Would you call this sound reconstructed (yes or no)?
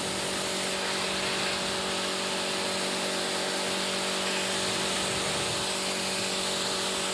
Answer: no